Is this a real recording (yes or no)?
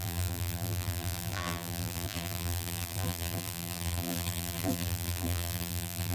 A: no